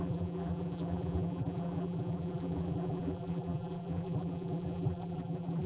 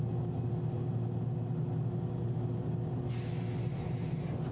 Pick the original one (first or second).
second